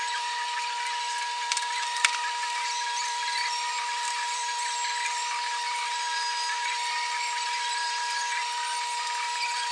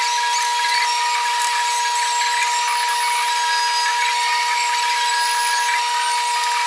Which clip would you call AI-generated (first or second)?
first